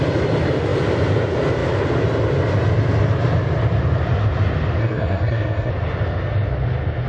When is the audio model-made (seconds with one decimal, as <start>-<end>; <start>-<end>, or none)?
4.8-5.7